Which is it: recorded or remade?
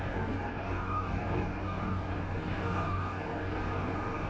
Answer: remade